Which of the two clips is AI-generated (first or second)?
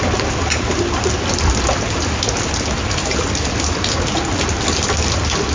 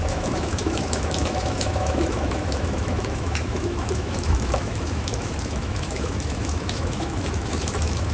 second